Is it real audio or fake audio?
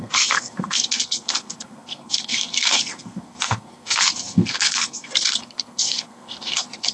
fake